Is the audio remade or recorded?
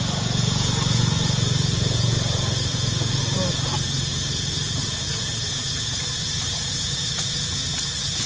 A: remade